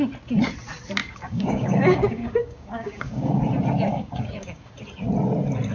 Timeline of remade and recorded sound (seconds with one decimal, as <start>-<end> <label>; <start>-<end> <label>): 0.0-1.0 recorded; 1.0-3.4 remade; 3.4-3.9 recorded; 3.9-4.7 remade; 4.7-5.7 recorded